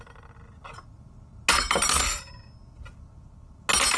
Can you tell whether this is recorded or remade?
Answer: recorded